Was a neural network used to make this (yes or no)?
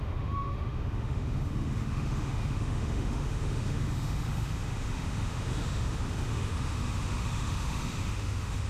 yes